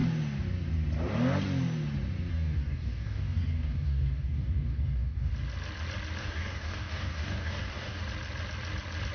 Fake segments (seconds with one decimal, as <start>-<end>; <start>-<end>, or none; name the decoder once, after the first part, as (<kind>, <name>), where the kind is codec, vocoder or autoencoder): 2.3-5.3 (codec, DAC); 6.2-8.0